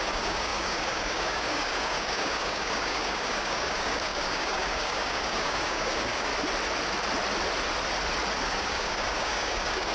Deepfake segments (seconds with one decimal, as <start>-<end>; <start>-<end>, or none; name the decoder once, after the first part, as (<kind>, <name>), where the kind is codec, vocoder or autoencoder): 0.0-6.3 (codec, DAC); 8.4-9.9